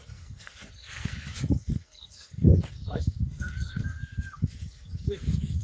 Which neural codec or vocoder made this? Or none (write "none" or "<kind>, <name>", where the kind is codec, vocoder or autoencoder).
codec, SNAC